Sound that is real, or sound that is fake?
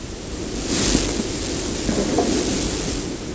real